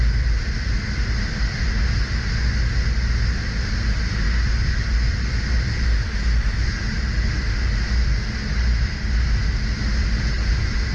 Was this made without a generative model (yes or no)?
yes